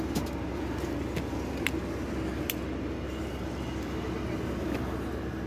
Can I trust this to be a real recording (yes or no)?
yes